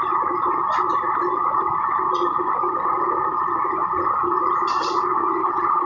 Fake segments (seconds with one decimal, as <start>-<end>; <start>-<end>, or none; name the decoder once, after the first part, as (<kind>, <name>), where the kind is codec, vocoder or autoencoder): 5.4-5.9 (codec, HILCodec)